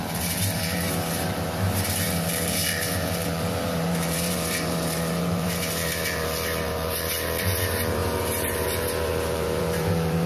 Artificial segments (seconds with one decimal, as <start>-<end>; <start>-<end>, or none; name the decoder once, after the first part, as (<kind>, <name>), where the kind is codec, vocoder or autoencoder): 0.0-10.3 (vocoder, BigVGAN v2)